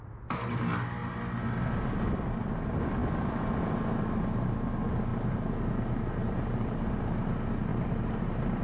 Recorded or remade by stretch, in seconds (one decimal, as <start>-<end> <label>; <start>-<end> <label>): 0.0-5.1 recorded; 5.1-7.0 remade; 7.0-7.7 recorded; 7.7-8.6 remade